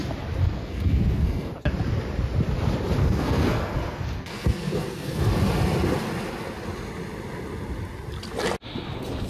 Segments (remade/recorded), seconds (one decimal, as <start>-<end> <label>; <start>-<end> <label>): 0.0-0.4 recorded; 0.4-1.5 remade; 1.5-3.0 recorded; 3.0-5.2 remade; 5.2-9.3 recorded